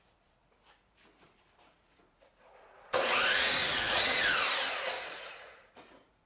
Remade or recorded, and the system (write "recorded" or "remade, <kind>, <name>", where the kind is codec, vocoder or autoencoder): remade, vocoder, Vocos